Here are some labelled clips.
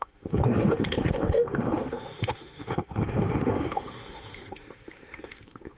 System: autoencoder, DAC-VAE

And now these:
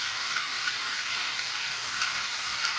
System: codec, DAC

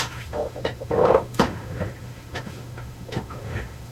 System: autoencoder, DAC-VAE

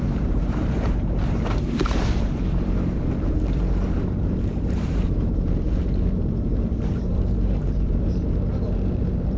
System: vocoder, BigVGAN v2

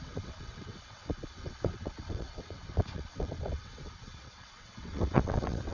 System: vocoder, WaveNeXt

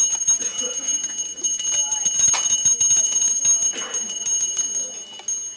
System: none